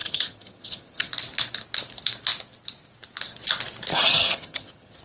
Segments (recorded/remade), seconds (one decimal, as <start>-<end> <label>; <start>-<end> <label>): 0.0-1.1 remade; 1.1-3.9 recorded; 3.9-5.0 remade